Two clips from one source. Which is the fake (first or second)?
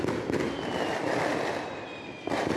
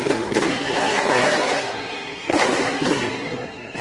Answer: second